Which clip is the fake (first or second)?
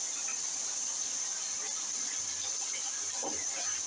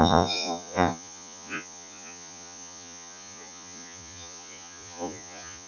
second